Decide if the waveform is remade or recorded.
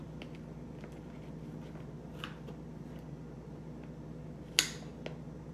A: recorded